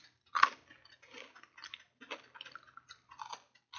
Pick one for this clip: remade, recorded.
recorded